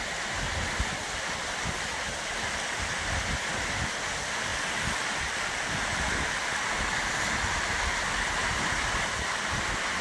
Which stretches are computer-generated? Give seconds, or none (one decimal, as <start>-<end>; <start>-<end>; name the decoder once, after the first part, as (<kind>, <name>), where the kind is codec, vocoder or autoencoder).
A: none